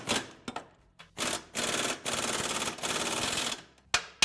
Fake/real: real